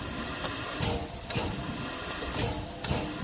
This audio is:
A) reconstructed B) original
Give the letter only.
B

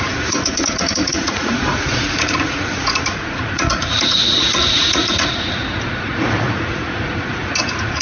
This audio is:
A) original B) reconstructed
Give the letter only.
B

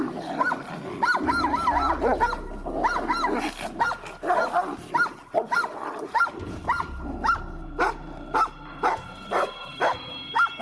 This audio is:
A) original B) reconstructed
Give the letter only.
A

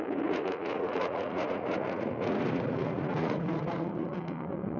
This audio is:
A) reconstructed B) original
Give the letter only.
A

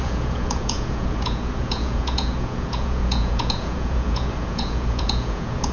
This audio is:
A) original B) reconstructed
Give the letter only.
B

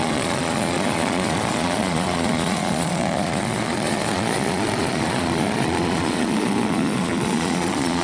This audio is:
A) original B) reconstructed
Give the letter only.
B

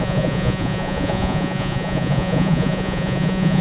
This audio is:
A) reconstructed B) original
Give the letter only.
A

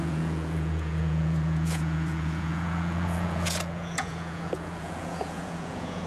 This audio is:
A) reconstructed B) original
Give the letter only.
A